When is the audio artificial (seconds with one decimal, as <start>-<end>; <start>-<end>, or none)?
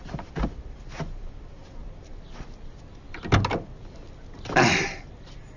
none